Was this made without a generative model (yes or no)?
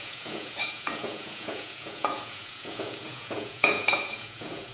no